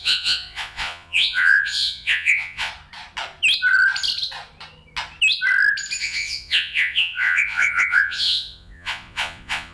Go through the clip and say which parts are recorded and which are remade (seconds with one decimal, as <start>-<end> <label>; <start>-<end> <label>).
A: 0.0-2.7 remade; 2.7-6.0 recorded; 6.0-9.7 remade